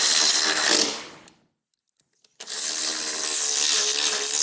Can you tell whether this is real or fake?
real